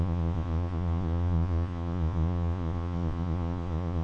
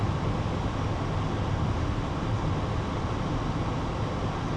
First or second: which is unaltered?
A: second